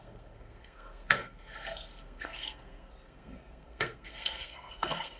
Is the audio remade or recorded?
remade